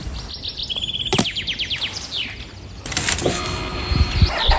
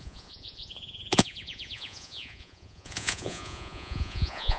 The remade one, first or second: second